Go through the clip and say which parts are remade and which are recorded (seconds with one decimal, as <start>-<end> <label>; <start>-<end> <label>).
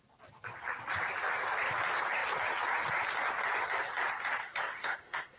0.0-4.4 recorded; 4.4-5.4 remade